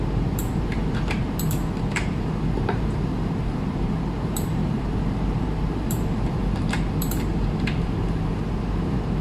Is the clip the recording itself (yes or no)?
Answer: no